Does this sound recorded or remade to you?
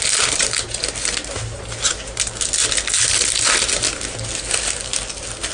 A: recorded